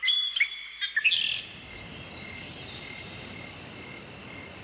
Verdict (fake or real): real